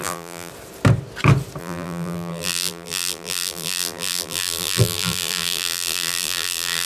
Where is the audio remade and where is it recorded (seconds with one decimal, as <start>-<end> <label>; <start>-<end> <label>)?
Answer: 0.0-0.5 remade; 0.5-1.6 recorded; 1.6-6.9 remade